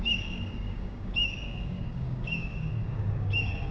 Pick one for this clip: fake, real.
fake